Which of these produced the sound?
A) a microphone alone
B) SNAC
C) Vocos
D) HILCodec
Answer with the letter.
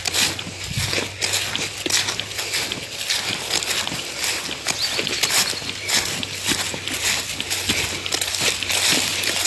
A